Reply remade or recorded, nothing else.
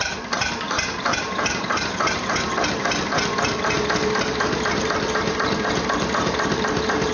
remade